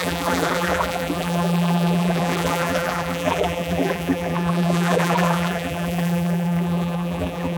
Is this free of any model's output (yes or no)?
no